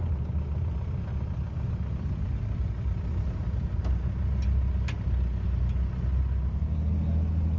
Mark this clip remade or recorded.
recorded